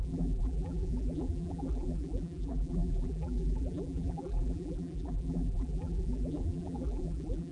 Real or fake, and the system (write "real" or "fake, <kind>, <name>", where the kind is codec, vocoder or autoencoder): fake, vocoder, BigVGAN v2